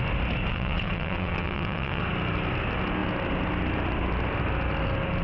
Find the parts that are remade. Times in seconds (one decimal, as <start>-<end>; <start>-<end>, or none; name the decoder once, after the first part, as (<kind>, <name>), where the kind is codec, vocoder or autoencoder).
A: 0.5-2.0 (vocoder, WaveNeXt)